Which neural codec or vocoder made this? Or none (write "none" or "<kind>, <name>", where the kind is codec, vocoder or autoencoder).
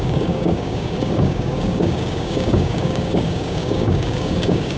codec, DAC